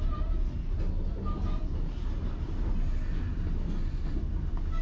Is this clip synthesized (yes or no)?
no